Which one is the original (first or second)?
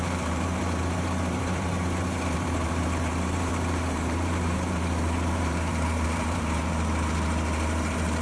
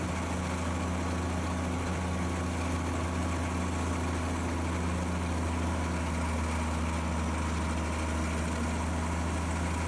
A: second